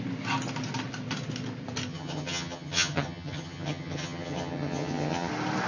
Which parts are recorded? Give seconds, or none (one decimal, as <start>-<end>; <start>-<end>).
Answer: 0.0-1.9; 5.3-5.7